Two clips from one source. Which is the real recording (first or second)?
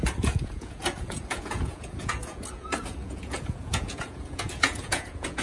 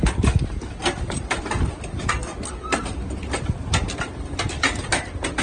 second